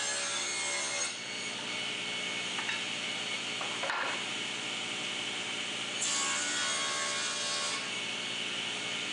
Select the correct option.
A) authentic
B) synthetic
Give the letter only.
A